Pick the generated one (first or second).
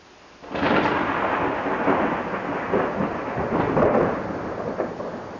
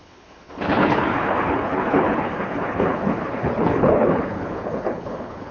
second